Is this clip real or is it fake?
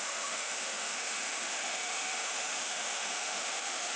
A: fake